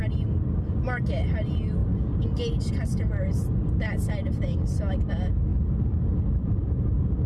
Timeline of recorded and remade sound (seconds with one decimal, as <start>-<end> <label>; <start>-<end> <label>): 0.0-7.3 recorded